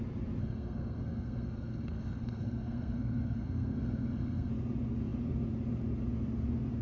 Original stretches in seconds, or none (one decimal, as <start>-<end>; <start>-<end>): 0.0-0.4; 4.5-6.8